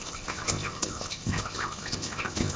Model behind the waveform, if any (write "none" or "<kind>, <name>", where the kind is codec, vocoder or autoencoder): codec, ZipCodec